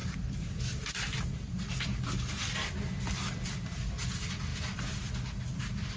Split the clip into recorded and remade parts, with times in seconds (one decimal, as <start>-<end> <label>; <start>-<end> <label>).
0.0-6.0 recorded